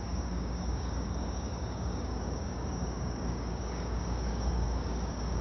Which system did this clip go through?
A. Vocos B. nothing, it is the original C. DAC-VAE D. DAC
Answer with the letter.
D